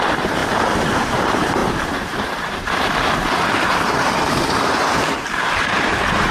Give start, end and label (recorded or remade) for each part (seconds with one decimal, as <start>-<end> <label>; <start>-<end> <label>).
0.0-0.4 remade; 0.4-1.2 recorded; 1.2-6.3 remade